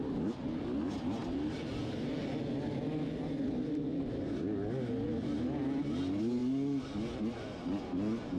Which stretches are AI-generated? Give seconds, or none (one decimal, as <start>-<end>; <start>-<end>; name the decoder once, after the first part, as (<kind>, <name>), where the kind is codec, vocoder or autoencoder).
none